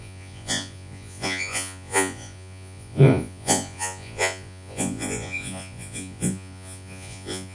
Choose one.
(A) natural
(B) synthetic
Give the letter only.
B